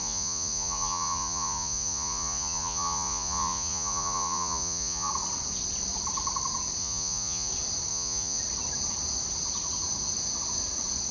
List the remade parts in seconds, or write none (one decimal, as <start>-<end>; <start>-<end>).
0.0-5.1; 6.8-7.5; 7.9-8.4